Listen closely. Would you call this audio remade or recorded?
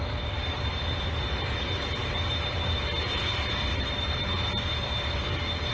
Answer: remade